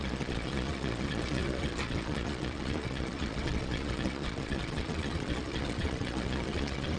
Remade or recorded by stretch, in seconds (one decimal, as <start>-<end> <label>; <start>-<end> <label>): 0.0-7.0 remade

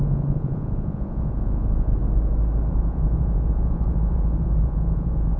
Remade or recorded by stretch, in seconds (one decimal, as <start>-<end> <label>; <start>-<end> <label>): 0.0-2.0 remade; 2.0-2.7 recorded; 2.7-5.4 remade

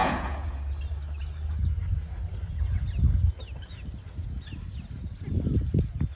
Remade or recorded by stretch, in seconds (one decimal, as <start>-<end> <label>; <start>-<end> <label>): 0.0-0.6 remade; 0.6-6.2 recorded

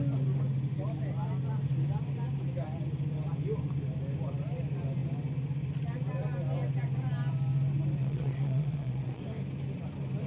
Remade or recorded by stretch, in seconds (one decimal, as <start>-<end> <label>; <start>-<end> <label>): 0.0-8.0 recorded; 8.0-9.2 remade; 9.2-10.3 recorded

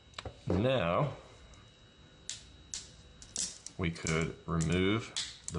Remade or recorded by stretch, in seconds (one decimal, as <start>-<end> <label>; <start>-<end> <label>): 0.0-5.6 recorded

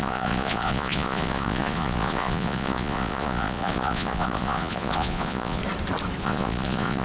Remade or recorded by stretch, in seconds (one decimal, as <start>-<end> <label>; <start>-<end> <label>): 0.0-5.6 remade; 5.6-6.2 recorded; 6.2-7.0 remade

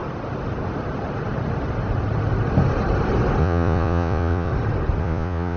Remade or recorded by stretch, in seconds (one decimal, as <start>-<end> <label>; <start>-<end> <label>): 0.0-3.4 recorded; 3.4-4.5 remade; 4.5-5.0 recorded; 5.0-5.6 remade

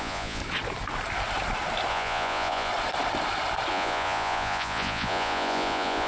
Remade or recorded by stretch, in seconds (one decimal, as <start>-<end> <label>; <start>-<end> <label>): 0.0-0.4 remade; 0.4-1.9 recorded; 1.9-2.7 remade; 2.7-3.7 recorded; 3.7-6.1 remade